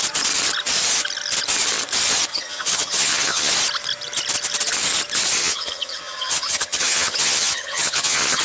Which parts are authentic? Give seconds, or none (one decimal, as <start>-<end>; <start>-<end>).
0.0-2.3; 3.5-5.4